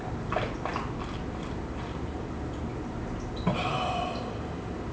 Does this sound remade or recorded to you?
recorded